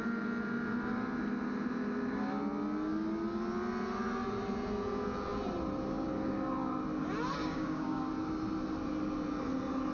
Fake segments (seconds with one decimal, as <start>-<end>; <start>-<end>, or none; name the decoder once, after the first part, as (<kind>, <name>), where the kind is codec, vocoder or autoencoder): 7.4-8.0 (codec, DAC)